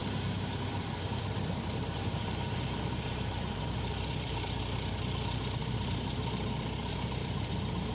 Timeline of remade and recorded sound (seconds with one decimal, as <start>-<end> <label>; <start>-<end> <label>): 0.0-4.6 remade; 4.6-5.6 recorded; 5.6-7.5 remade; 7.5-7.9 recorded